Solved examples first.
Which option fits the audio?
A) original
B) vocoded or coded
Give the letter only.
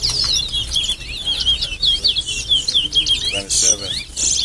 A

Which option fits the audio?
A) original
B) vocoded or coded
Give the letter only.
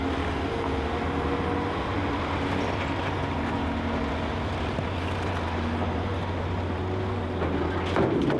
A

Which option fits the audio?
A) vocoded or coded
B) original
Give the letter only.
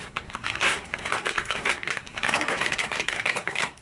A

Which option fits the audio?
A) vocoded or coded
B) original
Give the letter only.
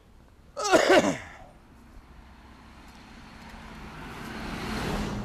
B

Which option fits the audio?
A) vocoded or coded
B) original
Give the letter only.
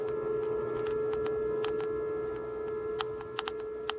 B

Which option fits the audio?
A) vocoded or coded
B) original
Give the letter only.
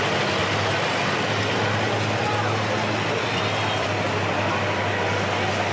B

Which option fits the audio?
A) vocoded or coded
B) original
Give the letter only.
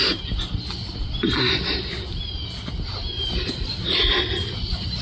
B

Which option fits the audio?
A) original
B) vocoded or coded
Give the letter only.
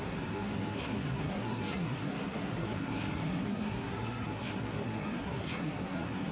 B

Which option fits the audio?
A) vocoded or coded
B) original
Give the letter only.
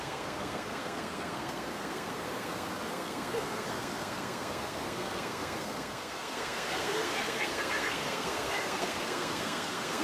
A